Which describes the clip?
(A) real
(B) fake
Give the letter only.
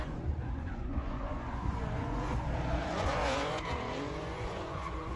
B